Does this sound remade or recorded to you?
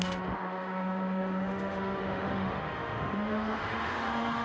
remade